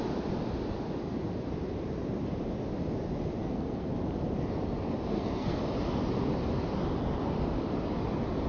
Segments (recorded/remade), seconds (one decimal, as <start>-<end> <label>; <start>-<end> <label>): 0.0-3.4 recorded; 3.4-3.9 remade; 3.9-5.1 recorded; 5.1-5.6 remade; 5.6-8.5 recorded

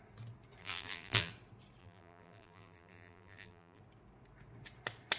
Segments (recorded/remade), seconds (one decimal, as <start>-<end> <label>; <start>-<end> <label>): 0.0-0.6 recorded; 0.6-1.3 remade; 1.3-1.8 recorded; 1.8-3.8 remade; 3.8-5.2 recorded

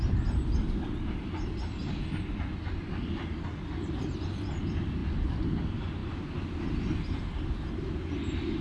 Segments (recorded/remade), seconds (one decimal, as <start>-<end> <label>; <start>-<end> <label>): 0.0-8.6 recorded

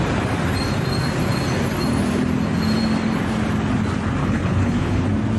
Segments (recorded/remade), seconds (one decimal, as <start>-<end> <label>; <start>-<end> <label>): 0.0-4.2 recorded; 4.2-5.0 remade; 5.0-5.4 recorded

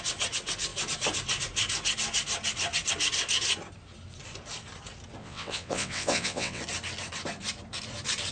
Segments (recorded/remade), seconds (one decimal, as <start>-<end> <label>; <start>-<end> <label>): 0.0-5.2 recorded; 5.2-6.6 remade; 6.6-8.3 recorded

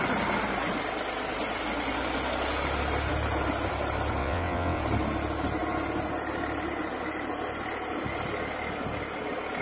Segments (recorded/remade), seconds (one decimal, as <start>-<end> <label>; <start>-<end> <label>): 0.0-4.2 recorded; 4.2-4.8 remade; 4.8-9.6 recorded